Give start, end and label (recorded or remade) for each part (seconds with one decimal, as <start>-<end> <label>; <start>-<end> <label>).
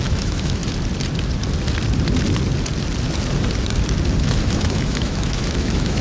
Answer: 0.0-0.6 remade; 0.6-4.2 recorded; 4.2-6.0 remade